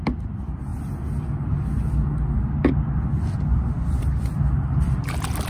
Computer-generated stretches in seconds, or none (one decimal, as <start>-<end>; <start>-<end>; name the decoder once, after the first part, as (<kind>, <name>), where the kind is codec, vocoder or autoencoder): none